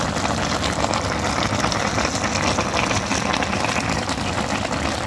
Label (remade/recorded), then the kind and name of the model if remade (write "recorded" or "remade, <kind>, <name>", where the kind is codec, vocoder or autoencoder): recorded